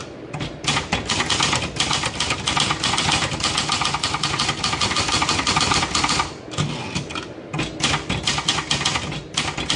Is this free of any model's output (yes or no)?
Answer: yes